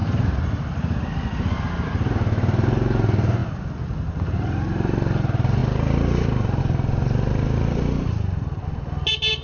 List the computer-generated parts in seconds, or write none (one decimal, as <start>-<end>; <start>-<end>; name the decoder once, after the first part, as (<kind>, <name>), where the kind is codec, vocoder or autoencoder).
none

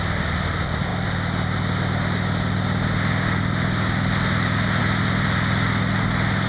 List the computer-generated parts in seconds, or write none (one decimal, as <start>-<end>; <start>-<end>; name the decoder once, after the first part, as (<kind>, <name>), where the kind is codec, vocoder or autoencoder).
none

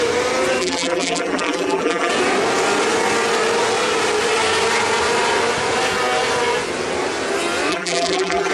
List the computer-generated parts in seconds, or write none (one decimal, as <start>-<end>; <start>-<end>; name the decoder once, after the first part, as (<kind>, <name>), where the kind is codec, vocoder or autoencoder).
0.6-2.1 (vocoder, BigVGAN v2); 7.7-8.5

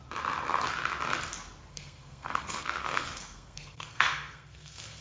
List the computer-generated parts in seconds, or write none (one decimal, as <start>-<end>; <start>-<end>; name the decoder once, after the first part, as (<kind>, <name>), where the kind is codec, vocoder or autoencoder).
1.7-5.0 (codec, SNAC)

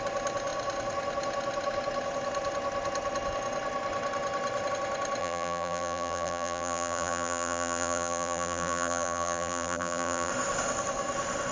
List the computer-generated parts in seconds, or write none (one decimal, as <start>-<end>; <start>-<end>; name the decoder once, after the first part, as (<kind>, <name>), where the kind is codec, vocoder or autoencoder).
5.2-10.3 (vocoder, BigVGAN v2)

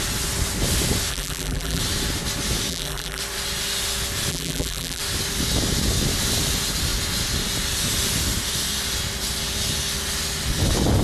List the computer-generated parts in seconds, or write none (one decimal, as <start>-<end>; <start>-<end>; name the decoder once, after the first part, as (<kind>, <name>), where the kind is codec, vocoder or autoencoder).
1.1-1.8 (vocoder, BigVGAN v2); 2.7-3.2; 4.3-5.0